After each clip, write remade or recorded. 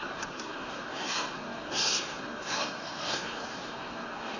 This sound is remade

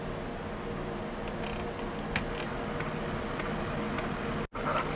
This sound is recorded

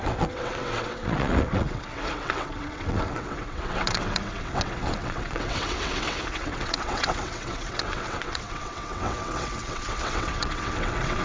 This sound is remade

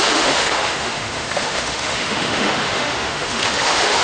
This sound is remade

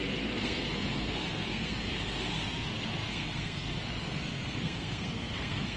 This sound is remade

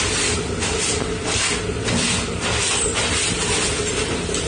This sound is recorded